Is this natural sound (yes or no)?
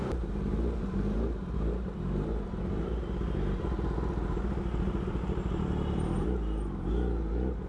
no